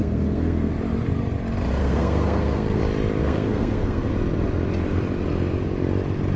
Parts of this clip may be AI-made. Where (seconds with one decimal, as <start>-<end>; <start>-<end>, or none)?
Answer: 0.0-0.7; 1.8-2.8; 3.2-4.1